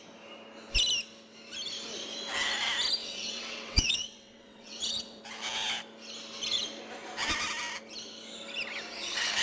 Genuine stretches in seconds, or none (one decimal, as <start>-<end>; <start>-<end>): 0.0-3.0; 5.2-8.9